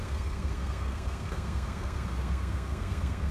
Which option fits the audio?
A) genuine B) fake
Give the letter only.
B